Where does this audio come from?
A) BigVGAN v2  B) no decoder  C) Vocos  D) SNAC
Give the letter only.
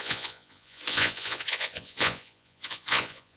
C